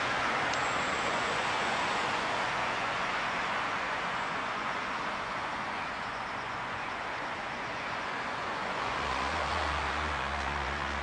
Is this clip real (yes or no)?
no